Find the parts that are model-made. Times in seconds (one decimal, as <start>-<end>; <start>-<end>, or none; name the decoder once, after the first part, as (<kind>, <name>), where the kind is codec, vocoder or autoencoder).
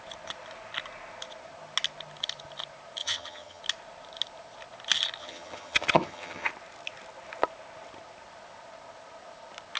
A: 3.0-3.6 (vocoder, HiFi-GAN); 5.2-6.5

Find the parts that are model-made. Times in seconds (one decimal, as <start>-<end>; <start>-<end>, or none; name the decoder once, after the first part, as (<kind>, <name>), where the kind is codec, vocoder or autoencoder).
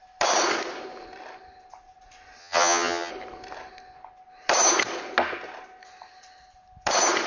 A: 2.4-3.1 (vocoder, HiFi-GAN)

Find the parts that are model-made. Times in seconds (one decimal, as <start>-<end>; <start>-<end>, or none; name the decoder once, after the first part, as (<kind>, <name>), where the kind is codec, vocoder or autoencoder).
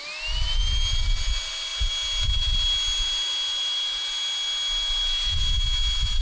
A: none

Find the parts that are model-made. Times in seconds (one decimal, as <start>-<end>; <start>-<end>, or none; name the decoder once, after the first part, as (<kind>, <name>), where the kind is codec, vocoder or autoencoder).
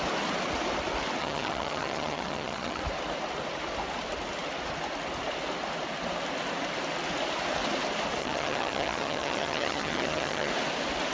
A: 1.2-2.8 (vocoder, HiFi-GAN); 8.2-10.5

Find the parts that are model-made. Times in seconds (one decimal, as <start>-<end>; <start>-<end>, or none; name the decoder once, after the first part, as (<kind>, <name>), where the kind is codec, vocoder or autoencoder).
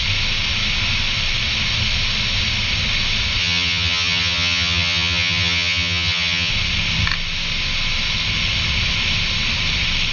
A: 3.4-6.5 (vocoder, HiFi-GAN)